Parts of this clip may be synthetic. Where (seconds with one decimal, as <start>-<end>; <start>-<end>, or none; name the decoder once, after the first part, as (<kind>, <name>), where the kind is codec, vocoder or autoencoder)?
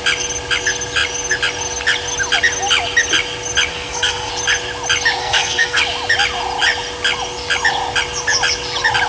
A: 3.7-4.3 (codec, SNAC); 5.2-5.8